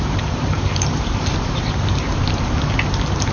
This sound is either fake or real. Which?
fake